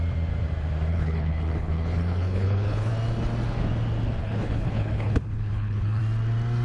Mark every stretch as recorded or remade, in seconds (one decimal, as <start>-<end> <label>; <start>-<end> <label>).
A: 0.0-0.9 recorded; 0.9-2.9 remade; 2.9-4.2 recorded; 4.2-6.0 remade; 6.0-6.6 recorded